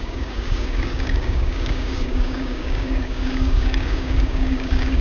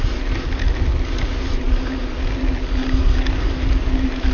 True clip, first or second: second